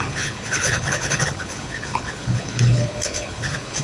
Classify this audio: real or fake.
fake